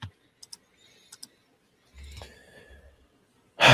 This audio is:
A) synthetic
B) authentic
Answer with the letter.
B